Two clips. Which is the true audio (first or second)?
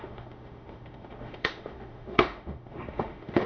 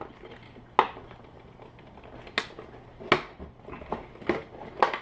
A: second